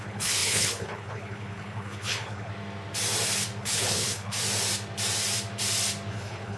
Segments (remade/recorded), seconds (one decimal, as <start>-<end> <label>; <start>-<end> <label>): 0.0-2.5 remade; 2.5-3.6 recorded; 3.6-4.4 remade; 4.4-6.1 recorded; 6.1-6.6 remade